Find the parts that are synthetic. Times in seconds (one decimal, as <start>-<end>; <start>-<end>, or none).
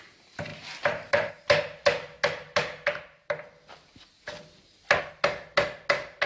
0.5-1.3